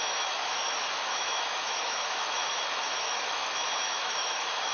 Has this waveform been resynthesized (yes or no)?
yes